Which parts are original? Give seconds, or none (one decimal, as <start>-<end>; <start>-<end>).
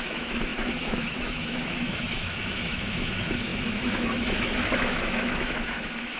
none